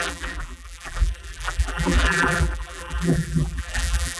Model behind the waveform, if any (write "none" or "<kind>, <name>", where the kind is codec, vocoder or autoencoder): vocoder, BigVGAN v2